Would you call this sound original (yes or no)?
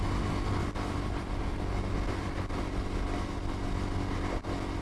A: yes